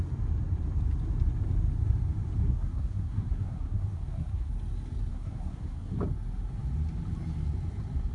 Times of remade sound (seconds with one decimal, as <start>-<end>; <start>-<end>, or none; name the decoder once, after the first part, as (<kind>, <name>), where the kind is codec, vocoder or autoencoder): 2.4-4.5 (codec, SNAC); 5.1-6.0